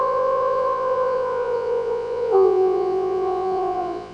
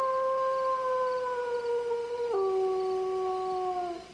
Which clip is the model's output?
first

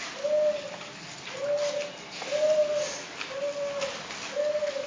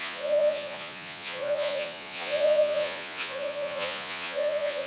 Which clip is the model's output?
second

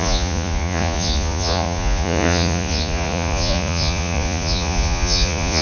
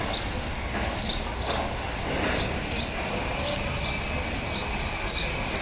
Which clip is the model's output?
first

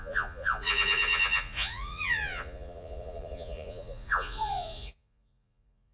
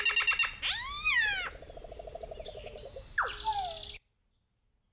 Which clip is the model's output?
first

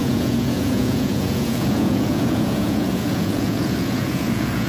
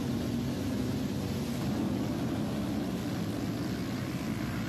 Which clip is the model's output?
first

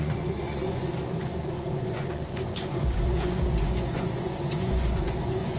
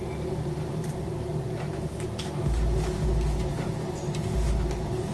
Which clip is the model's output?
first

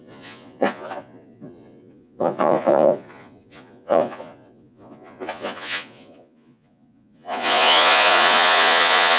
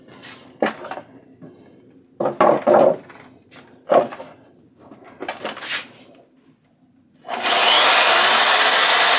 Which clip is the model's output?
first